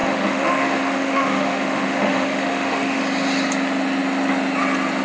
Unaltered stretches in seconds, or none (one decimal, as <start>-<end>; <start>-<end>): 3.0-5.0

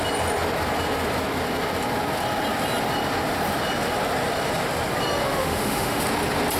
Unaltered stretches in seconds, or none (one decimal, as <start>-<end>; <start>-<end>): 0.0-5.2; 6.0-6.6